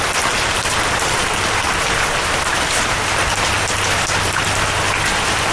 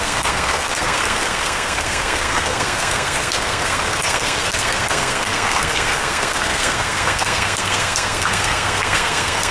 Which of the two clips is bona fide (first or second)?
first